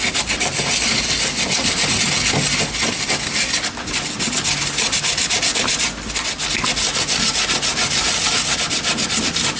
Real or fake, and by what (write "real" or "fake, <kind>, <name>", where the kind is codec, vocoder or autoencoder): real